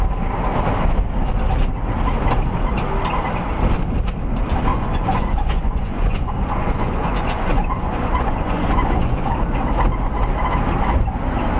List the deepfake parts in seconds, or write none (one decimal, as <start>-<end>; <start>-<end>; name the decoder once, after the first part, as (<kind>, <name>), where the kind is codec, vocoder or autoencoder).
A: 4.7-9.3 (vocoder, Vocos)

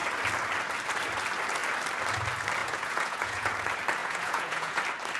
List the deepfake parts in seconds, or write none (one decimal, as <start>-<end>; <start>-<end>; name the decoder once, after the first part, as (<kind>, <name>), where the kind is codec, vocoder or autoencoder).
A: 2.6-3.5 (vocoder, Vocos); 4.0-4.8